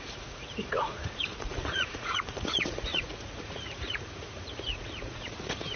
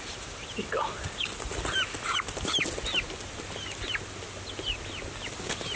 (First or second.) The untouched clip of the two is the second